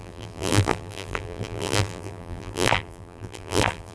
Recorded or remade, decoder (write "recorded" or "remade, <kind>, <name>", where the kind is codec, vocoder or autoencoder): remade, vocoder, BigVGAN v2